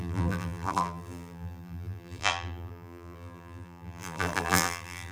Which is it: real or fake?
fake